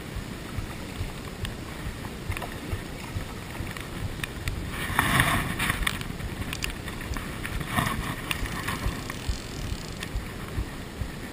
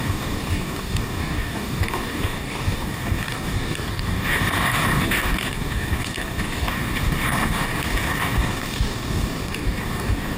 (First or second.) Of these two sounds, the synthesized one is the second